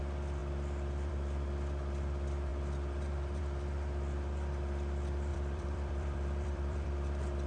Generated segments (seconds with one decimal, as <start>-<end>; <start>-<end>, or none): 5.3-7.5